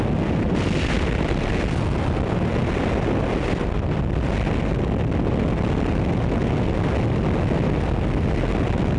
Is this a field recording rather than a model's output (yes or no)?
yes